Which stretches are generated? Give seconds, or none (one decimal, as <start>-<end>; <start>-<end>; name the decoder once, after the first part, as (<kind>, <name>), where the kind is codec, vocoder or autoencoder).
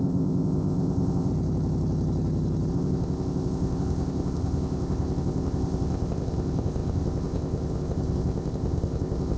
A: 0.0-1.3 (codec, ZipCodec); 2.7-9.4